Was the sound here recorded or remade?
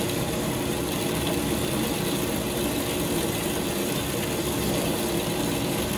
recorded